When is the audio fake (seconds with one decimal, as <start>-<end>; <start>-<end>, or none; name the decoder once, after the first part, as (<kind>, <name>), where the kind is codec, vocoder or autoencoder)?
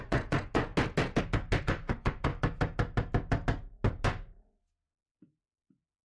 0.0-0.7 (vocoder, Vocos); 1.6-2.3; 5.6-6.0